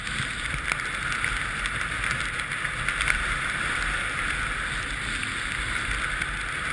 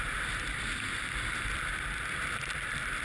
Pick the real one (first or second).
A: first